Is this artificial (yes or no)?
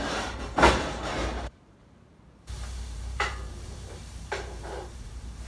yes